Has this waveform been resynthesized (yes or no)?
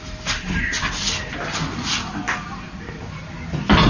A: no